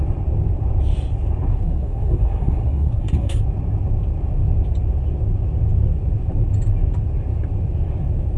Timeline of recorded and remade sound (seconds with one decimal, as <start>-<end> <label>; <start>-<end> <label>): 0.0-1.5 recorded; 1.5-3.4 remade; 3.4-8.4 recorded